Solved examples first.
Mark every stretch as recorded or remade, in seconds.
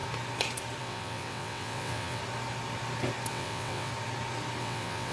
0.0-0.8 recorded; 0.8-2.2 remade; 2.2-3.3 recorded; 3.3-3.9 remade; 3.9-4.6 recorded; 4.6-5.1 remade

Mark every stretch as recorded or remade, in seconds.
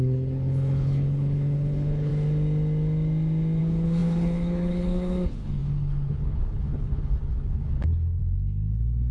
0.0-2.1 remade; 2.1-3.6 recorded; 3.6-9.1 remade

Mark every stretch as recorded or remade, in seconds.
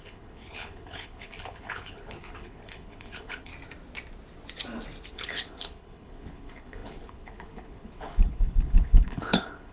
0.0-3.5 remade; 3.5-5.1 recorded; 5.1-9.7 remade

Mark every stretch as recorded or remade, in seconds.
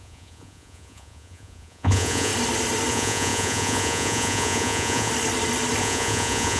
0.0-2.3 remade; 2.3-2.9 recorded; 2.9-5.1 remade; 5.1-5.8 recorded; 5.8-6.6 remade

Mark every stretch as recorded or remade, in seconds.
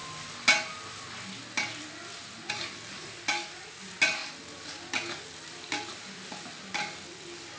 0.0-7.6 recorded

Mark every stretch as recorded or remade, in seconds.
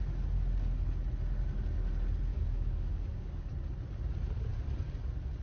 0.0-2.3 recorded; 2.3-3.5 remade; 3.5-5.4 recorded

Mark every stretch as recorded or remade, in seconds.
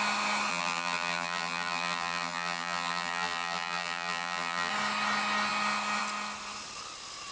0.0-0.5 recorded; 0.5-4.7 remade; 4.7-7.3 recorded